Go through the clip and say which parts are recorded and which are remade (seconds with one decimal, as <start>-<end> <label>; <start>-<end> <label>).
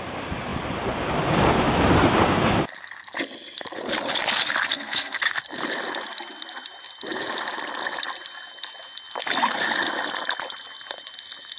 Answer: 0.0-4.7 recorded; 4.7-5.2 remade; 5.2-11.6 recorded